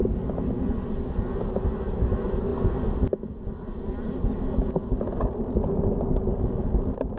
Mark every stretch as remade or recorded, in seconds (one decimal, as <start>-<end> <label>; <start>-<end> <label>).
0.0-7.2 recorded